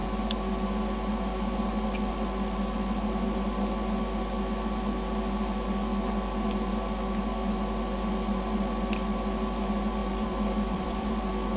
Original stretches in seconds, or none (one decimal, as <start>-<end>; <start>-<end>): 0.0-10.0; 11.1-11.6